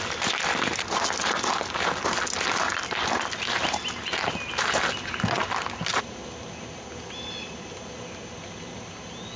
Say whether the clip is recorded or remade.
recorded